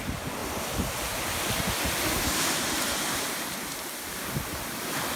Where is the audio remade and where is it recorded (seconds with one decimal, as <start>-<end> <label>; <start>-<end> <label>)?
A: 0.0-5.2 recorded